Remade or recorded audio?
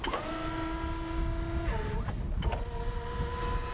recorded